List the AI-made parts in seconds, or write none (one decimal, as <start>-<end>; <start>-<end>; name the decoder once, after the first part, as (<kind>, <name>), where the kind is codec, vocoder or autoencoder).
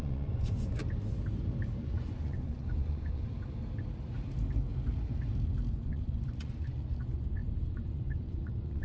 0.0-0.8 (vocoder, Vocos); 1.8-3.2; 5.7-8.8